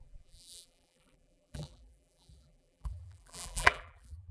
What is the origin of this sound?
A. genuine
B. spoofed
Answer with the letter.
B